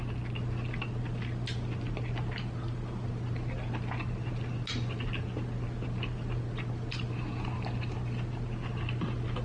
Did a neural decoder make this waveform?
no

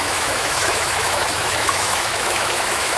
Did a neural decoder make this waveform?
yes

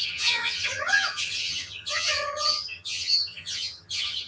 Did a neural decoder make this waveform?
yes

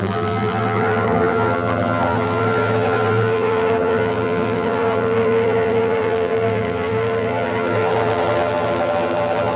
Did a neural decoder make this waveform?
yes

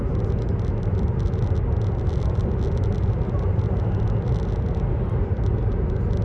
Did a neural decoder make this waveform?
no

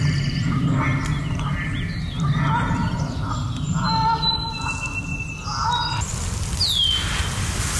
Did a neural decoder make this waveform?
no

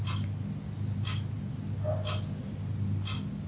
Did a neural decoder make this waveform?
no